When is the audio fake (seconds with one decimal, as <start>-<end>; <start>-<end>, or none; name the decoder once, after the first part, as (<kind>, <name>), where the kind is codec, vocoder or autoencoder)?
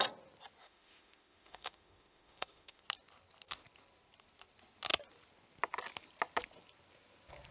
0.6-2.8 (autoencoder, DAC-VAE)